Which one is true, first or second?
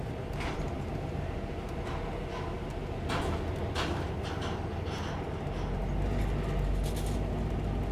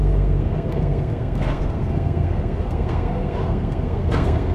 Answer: first